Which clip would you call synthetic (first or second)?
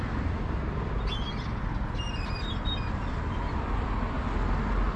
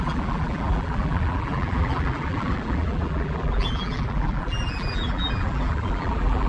second